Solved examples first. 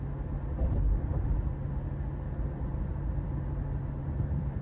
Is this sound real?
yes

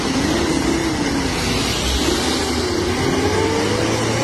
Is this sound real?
yes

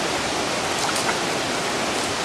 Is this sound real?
yes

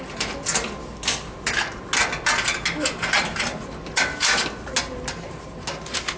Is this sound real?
yes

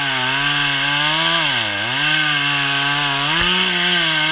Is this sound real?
yes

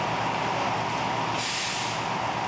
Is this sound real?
yes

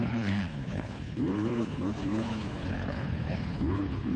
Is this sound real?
no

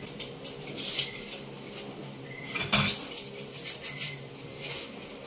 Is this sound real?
yes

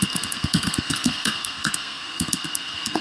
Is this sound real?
no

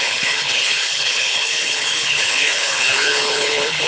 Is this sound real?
no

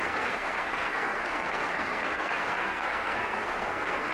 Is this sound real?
no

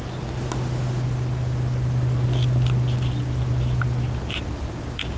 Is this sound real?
yes